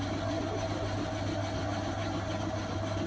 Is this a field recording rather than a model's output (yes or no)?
yes